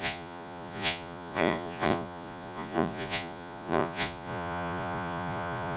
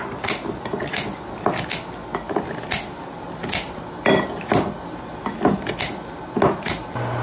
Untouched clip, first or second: second